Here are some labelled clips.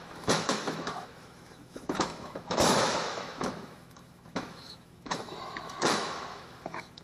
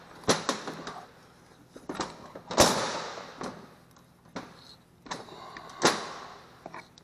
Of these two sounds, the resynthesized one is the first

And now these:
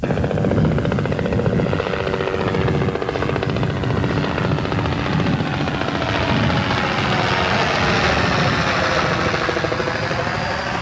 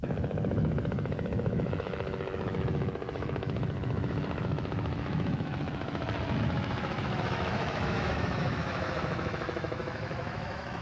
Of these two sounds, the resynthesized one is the second